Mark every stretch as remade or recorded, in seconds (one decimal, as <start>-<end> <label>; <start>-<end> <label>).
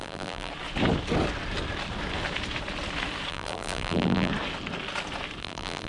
0.0-0.5 remade; 0.5-3.3 recorded; 3.3-4.3 remade; 4.3-5.4 recorded; 5.4-5.9 remade